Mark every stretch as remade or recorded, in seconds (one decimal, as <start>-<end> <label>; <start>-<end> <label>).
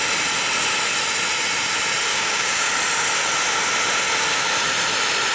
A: 0.0-2.1 recorded; 2.1-2.7 remade; 2.7-5.3 recorded